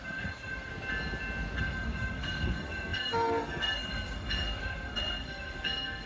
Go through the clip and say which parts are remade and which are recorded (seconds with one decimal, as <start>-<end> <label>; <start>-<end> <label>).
0.0-0.7 remade; 0.7-1.6 recorded; 1.6-6.1 remade